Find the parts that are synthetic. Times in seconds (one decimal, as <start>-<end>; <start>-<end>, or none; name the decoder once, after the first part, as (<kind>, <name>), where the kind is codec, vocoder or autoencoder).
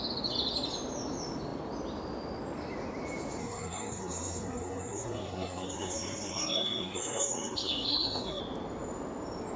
3.4-8.4 (codec, SNAC)